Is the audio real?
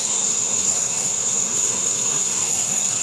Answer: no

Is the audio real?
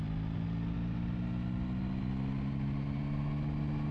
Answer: yes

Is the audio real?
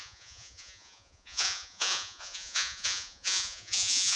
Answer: no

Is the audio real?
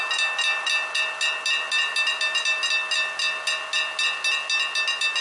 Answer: yes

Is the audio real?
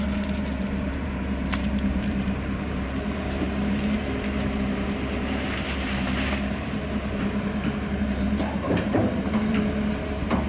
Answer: no